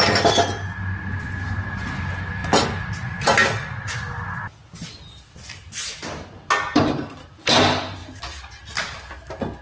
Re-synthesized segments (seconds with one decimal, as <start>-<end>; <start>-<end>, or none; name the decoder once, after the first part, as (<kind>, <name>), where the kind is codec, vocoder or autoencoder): none